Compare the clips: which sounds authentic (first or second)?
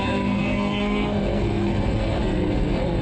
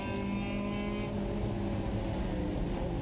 second